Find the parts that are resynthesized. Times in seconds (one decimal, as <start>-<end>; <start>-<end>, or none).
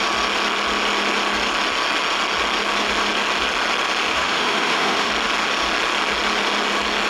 4.1-5.1